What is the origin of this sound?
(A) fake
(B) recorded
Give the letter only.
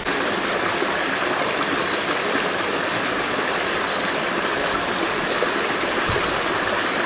B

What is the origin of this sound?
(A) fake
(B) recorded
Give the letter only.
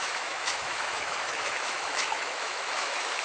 A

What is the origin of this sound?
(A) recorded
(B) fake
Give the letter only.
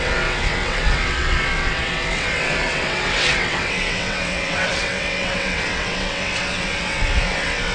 B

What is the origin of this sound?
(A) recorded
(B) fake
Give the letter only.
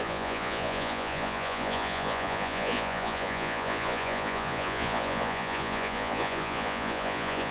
B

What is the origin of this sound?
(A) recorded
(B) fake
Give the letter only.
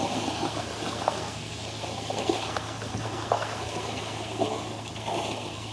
B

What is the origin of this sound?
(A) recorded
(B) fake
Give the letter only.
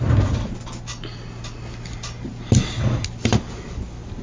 A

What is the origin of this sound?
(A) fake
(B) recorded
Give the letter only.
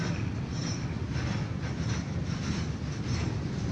B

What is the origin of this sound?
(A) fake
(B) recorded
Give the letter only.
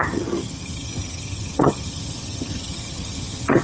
A